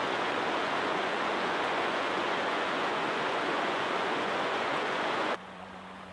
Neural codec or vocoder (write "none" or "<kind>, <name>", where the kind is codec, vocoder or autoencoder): vocoder, Vocos